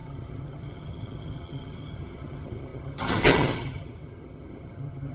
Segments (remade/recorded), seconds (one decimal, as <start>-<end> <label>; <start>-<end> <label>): 0.0-5.1 remade